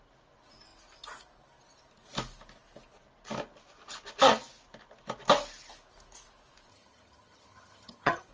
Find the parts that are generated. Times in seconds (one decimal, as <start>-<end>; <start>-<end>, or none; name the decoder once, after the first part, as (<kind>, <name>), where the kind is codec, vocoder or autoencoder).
6.7-8.3 (vocoder, HiFi-GAN)